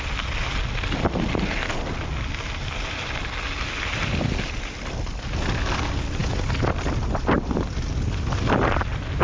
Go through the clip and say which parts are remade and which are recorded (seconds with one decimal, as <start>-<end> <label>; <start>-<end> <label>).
0.0-9.2 recorded